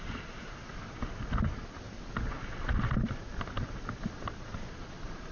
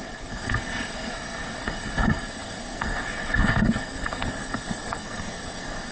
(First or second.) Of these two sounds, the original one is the first